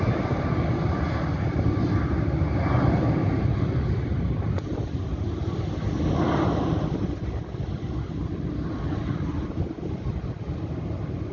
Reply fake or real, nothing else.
real